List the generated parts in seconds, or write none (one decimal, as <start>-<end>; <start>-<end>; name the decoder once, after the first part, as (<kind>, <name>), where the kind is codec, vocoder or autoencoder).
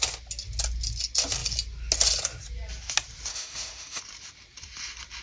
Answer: 3.3-4.0 (autoencoder, DAC-VAE)